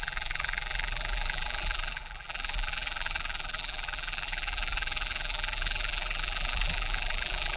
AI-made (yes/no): yes